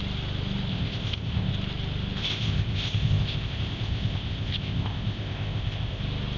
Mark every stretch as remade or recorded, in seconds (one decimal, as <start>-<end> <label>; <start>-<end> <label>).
0.0-0.7 recorded; 0.7-1.5 remade; 1.5-2.2 recorded; 2.2-6.0 remade; 6.0-6.4 recorded